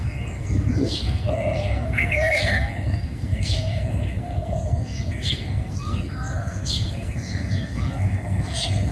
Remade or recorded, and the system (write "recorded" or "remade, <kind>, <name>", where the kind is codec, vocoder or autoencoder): remade, codec, SNAC